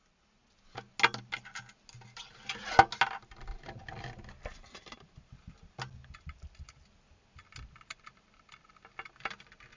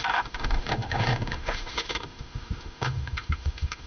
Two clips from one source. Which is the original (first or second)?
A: first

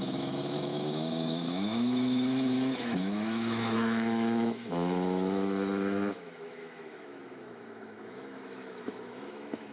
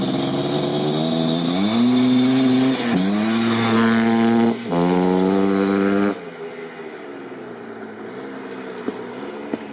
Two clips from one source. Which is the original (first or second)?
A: second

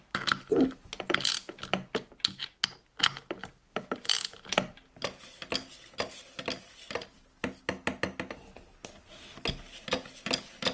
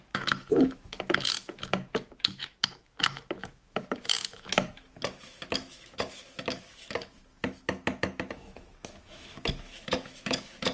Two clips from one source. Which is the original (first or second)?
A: first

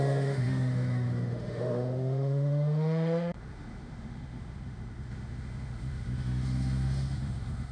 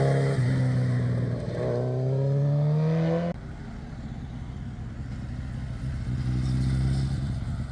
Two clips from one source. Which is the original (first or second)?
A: second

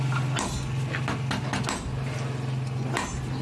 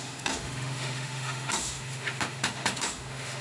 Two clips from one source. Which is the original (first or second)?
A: first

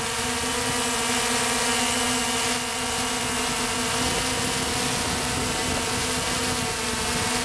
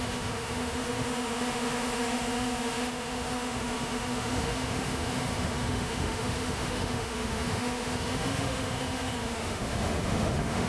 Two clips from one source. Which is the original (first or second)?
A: first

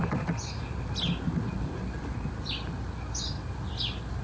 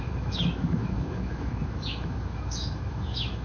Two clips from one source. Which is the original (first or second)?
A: first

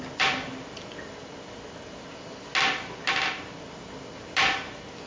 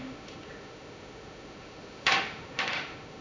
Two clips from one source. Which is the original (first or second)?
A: first